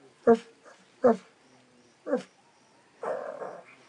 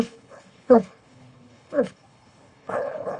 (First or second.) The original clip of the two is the first